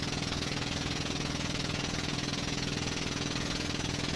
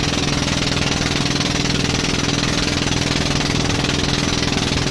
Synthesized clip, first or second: first